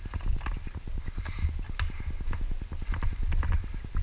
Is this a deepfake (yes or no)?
no